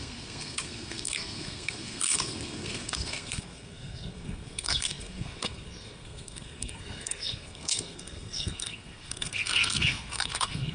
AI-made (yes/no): yes